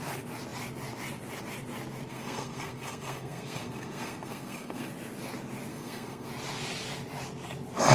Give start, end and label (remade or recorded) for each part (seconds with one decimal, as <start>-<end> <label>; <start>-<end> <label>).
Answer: 0.0-2.1 recorded; 2.1-4.9 remade; 4.9-5.7 recorded; 5.7-6.3 remade; 6.3-7.9 recorded